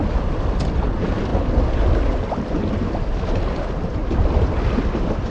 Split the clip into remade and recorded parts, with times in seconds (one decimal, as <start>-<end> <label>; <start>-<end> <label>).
0.0-1.3 remade; 1.3-3.3 recorded; 3.3-4.0 remade; 4.0-4.8 recorded; 4.8-5.3 remade

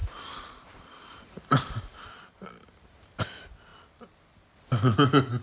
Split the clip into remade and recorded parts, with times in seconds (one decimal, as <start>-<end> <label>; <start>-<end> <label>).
0.0-3.2 remade; 3.2-5.4 recorded